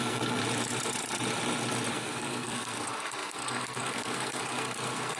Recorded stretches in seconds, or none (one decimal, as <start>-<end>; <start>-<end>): 0.4-1.9